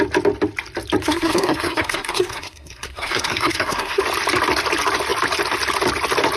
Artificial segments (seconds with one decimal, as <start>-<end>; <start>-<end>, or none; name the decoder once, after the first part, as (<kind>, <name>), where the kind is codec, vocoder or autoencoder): 1.0-4.0 (codec, SNAC)